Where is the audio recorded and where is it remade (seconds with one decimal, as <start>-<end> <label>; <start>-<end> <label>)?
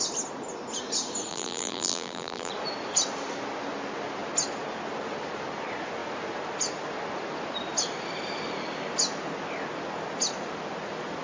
0.0-1.3 recorded; 1.3-2.5 remade; 2.5-11.2 recorded